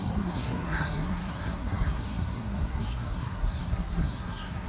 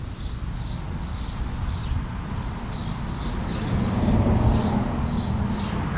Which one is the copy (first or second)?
first